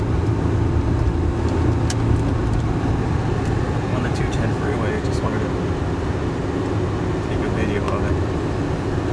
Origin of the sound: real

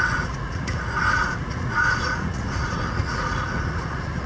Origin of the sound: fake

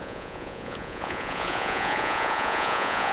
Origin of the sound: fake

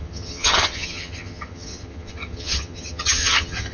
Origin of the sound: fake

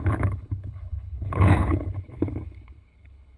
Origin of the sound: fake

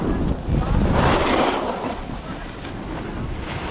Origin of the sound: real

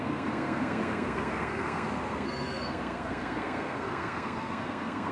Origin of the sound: fake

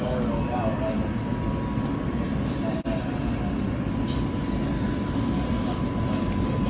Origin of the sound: real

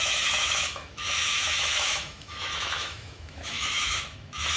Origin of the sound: fake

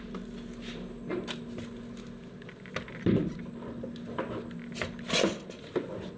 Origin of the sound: real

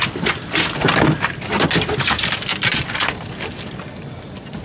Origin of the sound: real